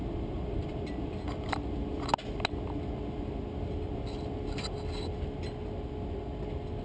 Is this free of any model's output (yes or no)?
yes